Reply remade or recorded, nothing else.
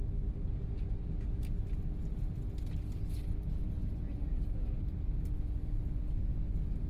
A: recorded